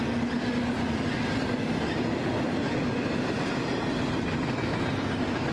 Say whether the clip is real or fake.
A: real